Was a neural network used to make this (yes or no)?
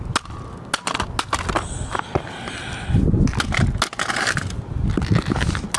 no